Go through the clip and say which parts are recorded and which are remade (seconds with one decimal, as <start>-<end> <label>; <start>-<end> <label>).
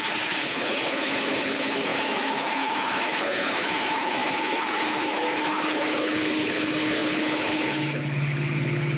0.0-9.0 remade